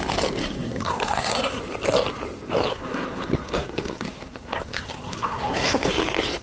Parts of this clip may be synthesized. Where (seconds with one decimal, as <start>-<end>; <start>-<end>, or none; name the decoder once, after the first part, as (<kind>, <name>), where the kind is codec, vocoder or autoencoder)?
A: 0.4-1.6 (codec, SNAC); 2.7-5.9